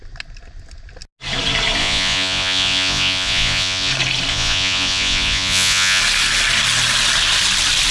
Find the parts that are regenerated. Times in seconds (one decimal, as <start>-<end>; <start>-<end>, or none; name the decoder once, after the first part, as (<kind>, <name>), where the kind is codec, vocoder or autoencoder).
1.8-3.9 (vocoder, Vocos); 4.3-6.0